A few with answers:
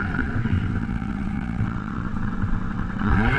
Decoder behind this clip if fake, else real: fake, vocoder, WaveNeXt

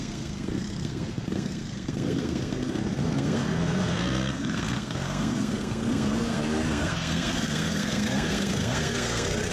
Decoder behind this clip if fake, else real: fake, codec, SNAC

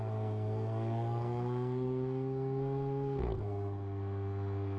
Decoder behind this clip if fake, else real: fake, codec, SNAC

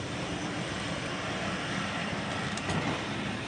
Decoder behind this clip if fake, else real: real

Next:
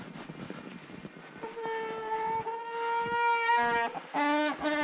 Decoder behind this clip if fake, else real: real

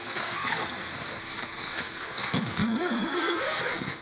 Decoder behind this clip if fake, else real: fake, codec, SNAC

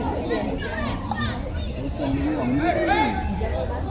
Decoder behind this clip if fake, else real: real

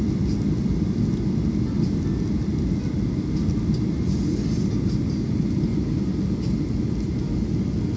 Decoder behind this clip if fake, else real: real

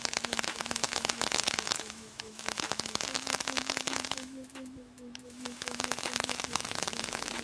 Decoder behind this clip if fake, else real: fake, autoencoder, DAC-VAE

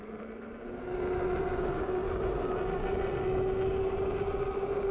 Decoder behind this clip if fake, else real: real